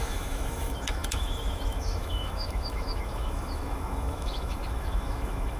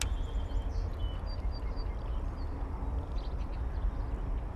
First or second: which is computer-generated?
first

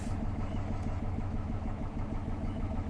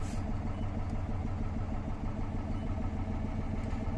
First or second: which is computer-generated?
first